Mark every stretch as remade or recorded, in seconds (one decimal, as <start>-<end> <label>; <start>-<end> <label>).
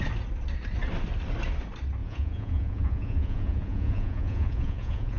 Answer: 0.0-2.0 recorded; 2.0-5.2 remade